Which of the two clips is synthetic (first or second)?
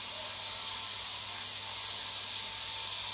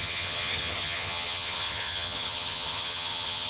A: second